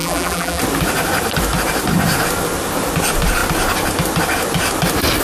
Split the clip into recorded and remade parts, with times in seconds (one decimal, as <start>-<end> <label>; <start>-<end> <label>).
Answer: 0.0-0.6 remade; 0.6-5.2 recorded

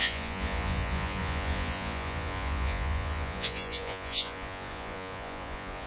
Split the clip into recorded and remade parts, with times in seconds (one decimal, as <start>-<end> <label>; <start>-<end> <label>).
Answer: 0.0-5.9 remade

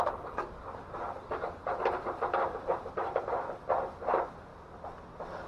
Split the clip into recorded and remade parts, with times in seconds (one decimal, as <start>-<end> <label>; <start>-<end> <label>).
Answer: 0.0-1.6 recorded; 1.6-4.0 remade; 4.0-5.5 recorded

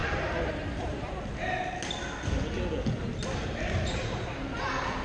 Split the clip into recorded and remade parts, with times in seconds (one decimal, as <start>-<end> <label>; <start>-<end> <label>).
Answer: 0.0-1.1 remade; 1.1-5.0 recorded

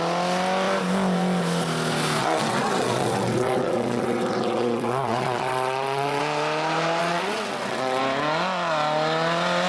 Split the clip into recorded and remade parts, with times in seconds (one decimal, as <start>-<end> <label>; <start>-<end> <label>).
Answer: 0.0-2.2 recorded; 2.2-6.2 remade; 6.2-7.0 recorded; 7.0-8.0 remade; 8.0-9.7 recorded

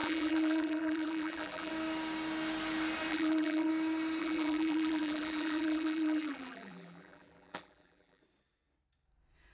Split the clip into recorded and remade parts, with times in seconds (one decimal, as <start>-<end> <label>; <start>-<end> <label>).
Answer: 0.0-1.7 remade; 1.7-3.1 recorded; 3.1-3.7 remade; 3.7-4.2 recorded; 4.2-8.2 remade; 8.2-9.5 recorded

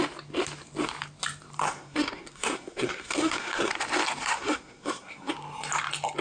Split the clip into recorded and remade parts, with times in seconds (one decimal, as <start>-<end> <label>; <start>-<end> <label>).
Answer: 0.0-1.6 recorded; 1.6-3.7 remade; 3.7-4.2 recorded; 4.2-5.3 remade; 5.3-6.2 recorded